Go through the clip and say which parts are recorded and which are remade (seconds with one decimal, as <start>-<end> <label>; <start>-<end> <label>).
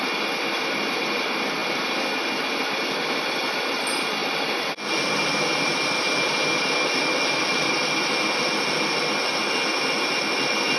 0.0-10.8 recorded